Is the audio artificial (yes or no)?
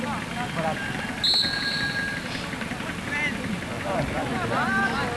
no